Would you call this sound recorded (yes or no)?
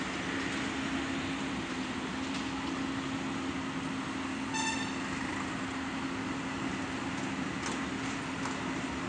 yes